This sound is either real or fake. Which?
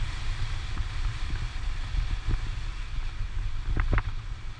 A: real